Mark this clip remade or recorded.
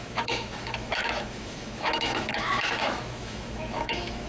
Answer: remade